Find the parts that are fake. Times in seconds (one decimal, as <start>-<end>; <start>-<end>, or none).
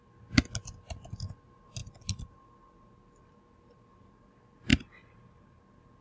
1.8-2.3; 4.7-5.6